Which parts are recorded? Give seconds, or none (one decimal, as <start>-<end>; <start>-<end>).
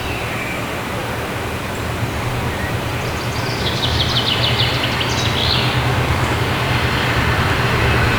0.0-3.5; 4.0-5.4; 6.5-8.2